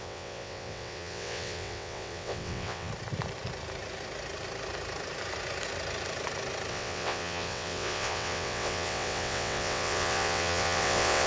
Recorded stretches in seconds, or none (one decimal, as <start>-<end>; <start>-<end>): 2.9-6.7